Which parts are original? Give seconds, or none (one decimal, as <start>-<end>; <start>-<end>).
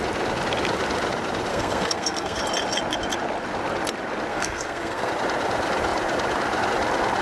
0.0-1.5; 2.4-4.3; 5.1-7.2